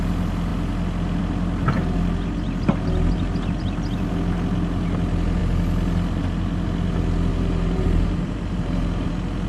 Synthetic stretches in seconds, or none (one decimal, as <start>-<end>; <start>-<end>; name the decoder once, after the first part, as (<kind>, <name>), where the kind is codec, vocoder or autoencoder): 7.3-9.1 (vocoder, BigVGAN v2)